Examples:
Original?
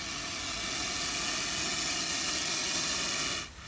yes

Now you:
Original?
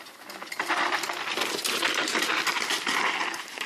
yes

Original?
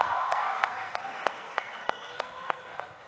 no